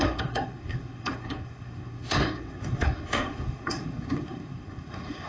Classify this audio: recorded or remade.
remade